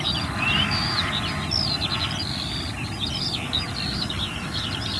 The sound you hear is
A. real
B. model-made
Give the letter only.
A